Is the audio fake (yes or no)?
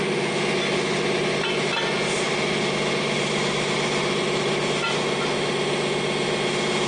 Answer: no